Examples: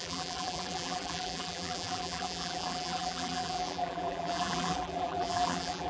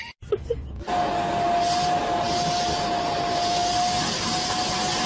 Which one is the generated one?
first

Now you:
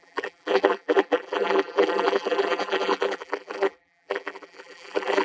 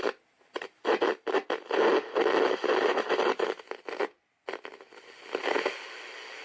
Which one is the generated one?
first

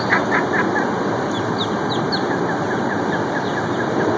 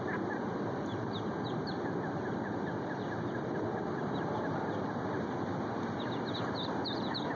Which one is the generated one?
second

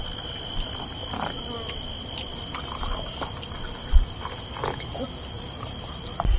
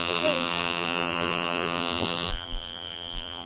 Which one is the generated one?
second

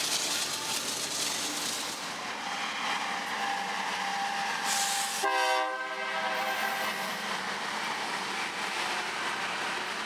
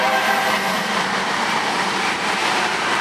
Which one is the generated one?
second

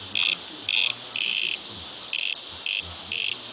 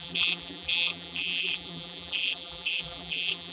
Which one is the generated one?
second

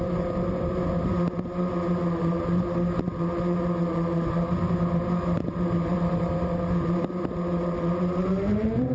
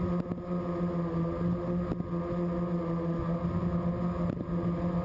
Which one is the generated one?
first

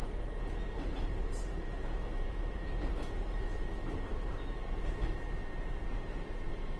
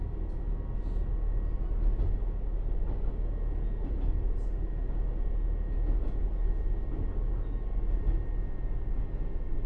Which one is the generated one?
first